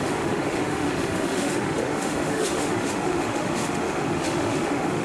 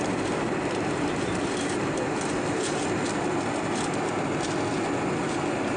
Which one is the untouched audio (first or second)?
second